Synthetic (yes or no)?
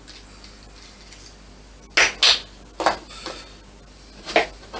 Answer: no